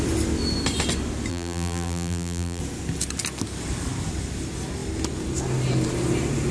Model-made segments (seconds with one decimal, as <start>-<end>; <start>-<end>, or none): 1.3-2.6